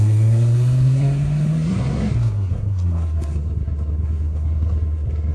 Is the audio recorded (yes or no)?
no